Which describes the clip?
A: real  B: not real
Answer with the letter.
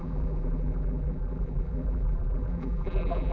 B